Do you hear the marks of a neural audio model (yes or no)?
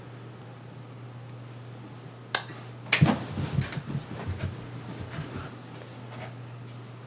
no